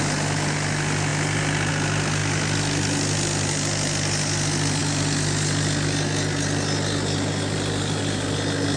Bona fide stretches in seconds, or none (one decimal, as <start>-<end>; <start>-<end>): 0.0-8.8